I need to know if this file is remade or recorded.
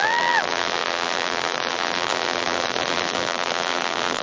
remade